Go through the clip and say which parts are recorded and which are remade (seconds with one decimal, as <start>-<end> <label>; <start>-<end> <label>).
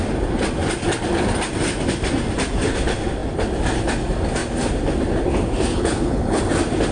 0.0-5.7 recorded; 5.7-6.4 remade; 6.4-6.9 recorded